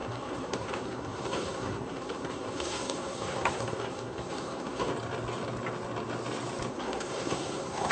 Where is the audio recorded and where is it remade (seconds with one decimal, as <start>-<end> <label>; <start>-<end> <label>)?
0.0-4.9 remade; 4.9-6.7 recorded; 6.7-7.9 remade